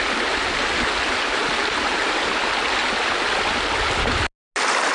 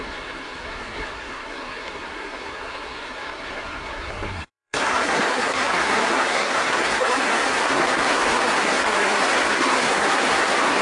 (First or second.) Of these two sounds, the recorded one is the first